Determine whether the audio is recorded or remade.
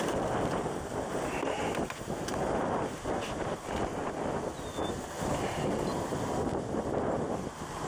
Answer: recorded